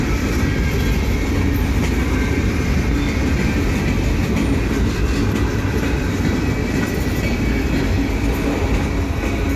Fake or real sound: real